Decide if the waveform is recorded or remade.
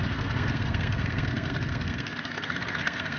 remade